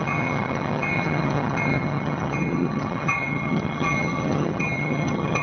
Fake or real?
fake